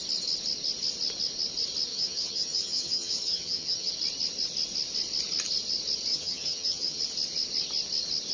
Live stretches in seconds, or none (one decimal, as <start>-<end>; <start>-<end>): 0.0-1.9; 3.9-6.1; 7.0-8.3

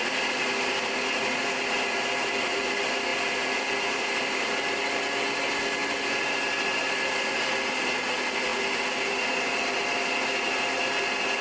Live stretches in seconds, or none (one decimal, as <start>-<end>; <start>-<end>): 0.0-11.4

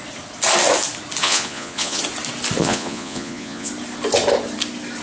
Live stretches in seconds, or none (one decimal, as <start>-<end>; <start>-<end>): 0.0-1.2; 2.0-2.6; 3.7-5.0

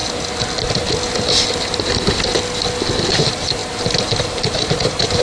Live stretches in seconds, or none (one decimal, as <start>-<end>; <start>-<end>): 0.0-3.1

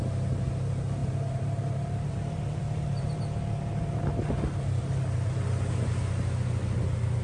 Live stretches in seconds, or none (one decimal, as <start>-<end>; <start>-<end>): 0.0-1.0; 3.2-7.2

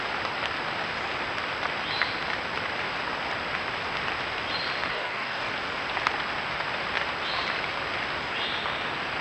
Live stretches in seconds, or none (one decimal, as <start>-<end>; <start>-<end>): 0.0-4.9; 5.5-9.2

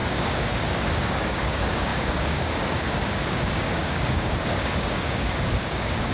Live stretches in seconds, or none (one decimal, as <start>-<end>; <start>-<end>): none

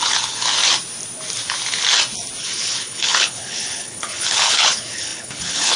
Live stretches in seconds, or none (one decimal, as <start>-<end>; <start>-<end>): 0.6-2.4